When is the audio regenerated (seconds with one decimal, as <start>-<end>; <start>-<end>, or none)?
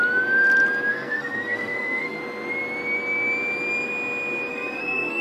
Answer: 0.9-2.2; 4.5-5.2